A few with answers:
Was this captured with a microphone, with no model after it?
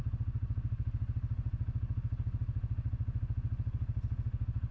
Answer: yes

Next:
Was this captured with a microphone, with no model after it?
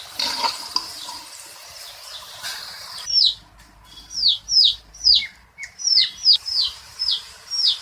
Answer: no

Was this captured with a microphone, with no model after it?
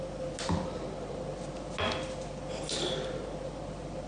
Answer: yes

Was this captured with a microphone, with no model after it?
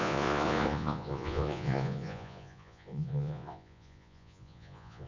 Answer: no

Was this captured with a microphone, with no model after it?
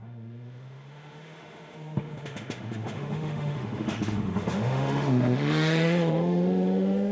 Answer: no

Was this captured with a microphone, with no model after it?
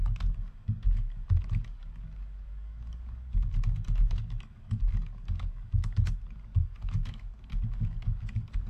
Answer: no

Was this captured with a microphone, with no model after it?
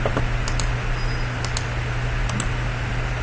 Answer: yes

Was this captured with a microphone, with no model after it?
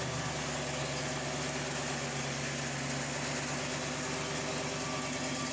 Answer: yes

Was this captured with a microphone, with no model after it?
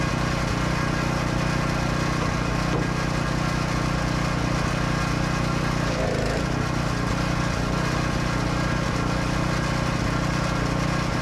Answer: yes